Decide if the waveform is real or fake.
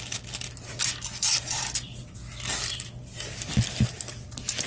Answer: real